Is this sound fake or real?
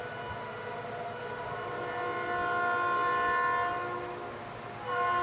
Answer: real